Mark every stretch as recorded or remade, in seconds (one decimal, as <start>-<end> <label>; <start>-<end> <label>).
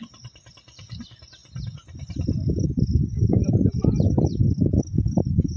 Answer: 0.0-5.6 recorded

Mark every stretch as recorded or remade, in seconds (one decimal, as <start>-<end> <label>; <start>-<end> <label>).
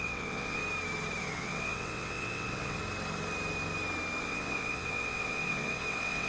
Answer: 0.0-0.6 remade; 0.6-1.2 recorded; 1.2-2.8 remade; 2.8-4.2 recorded; 4.2-6.3 remade